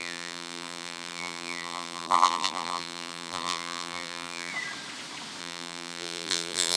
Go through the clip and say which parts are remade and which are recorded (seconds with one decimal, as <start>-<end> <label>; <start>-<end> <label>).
0.0-4.5 remade; 4.5-5.4 recorded; 5.4-6.8 remade